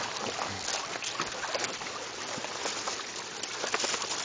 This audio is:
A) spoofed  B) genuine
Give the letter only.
B